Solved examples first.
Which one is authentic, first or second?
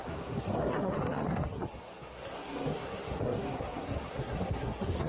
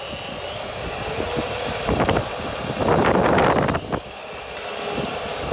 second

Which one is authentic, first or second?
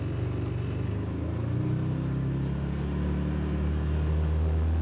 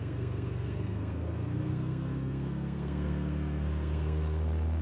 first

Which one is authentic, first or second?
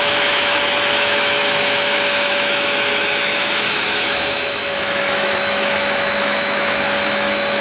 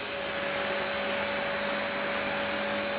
second